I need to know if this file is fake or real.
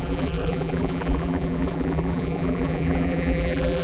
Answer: fake